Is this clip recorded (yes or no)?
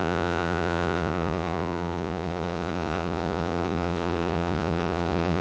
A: no